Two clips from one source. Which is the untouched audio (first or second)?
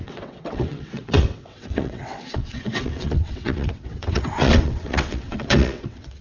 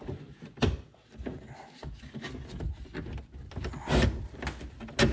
second